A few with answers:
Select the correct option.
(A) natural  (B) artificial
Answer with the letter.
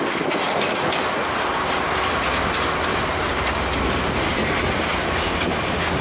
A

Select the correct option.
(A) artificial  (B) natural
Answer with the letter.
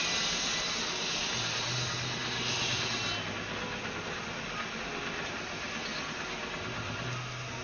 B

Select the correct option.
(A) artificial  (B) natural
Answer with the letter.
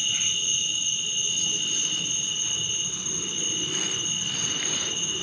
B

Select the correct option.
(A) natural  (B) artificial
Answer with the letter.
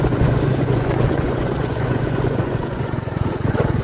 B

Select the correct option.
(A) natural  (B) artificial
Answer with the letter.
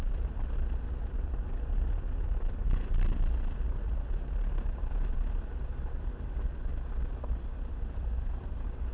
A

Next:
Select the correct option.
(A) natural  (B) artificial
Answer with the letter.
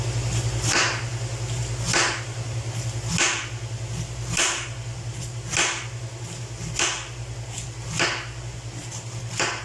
A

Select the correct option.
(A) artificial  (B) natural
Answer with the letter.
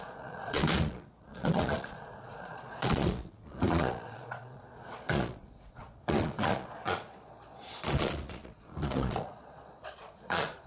A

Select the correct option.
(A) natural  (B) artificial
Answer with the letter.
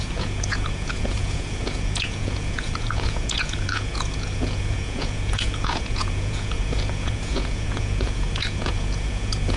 B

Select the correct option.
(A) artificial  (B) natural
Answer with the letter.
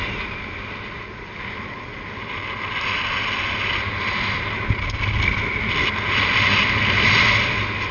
B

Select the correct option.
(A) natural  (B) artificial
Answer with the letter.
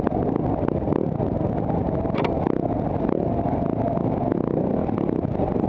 A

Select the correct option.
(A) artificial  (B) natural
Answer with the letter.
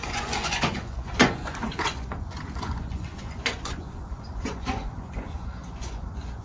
A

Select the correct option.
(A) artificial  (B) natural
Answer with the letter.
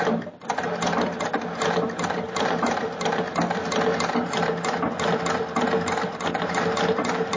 B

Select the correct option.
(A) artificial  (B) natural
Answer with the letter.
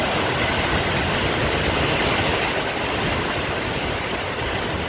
B